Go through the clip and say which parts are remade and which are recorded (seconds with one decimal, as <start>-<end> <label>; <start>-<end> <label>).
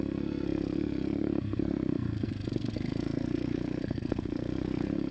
0.0-5.1 remade